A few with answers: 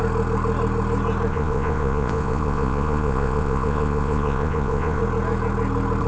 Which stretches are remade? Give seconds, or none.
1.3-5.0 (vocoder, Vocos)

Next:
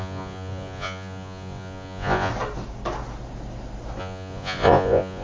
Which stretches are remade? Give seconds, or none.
0.0-2.3 (vocoder, Vocos); 4.0-5.2

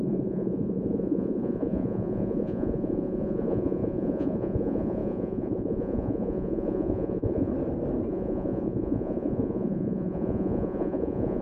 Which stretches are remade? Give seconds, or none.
0.0-7.5 (vocoder, Vocos); 8.1-11.4

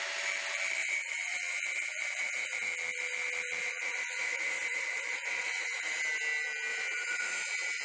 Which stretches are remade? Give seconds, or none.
0.8-2.7 (vocoder, Vocos); 3.6-6.0; 6.7-7.8

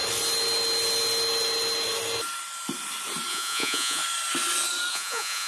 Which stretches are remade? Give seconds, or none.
3.3-4.0 (vocoder, Vocos); 4.9-5.5

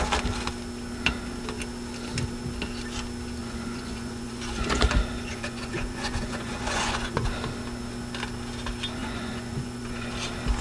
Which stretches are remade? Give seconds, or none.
3.4-4.8 (vocoder, Vocos); 5.3-7.3; 9.0-10.1

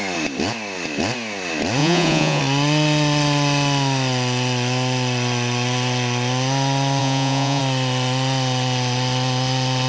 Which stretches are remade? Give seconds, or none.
1.8-2.4 (vocoder, Vocos); 7.0-7.6